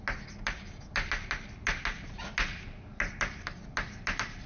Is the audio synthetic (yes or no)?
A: no